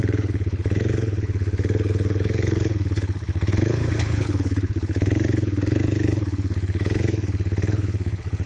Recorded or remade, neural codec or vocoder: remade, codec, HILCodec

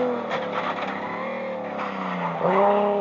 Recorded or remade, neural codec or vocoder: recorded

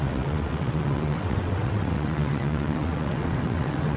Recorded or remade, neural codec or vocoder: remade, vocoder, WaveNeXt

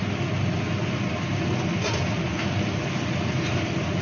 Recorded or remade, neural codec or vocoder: recorded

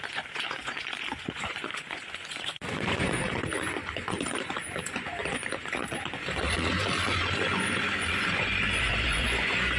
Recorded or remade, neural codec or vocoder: remade, vocoder, Vocos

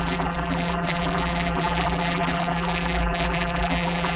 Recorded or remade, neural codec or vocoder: remade, vocoder, BigVGAN v2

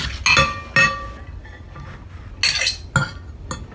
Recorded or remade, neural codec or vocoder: recorded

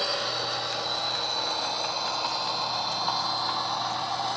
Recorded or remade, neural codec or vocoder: recorded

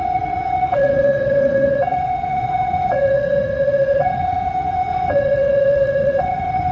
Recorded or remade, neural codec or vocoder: remade, vocoder, WaveNeXt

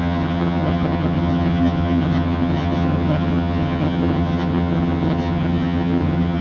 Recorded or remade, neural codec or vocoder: remade, vocoder, HiFi-GAN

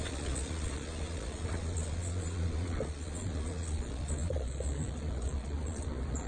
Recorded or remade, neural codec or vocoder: remade, vocoder, Vocos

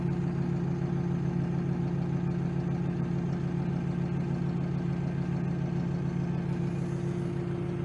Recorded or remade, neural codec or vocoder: recorded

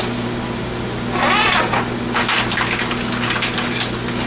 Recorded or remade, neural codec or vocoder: recorded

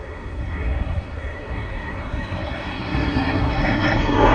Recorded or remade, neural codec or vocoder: remade, codec, SNAC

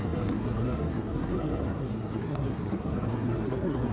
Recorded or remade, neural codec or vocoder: remade, codec, SNAC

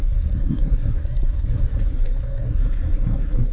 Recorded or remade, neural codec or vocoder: remade, codec, SNAC